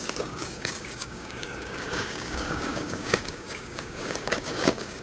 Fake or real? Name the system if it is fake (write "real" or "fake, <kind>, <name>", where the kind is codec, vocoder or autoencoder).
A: fake, codec, DAC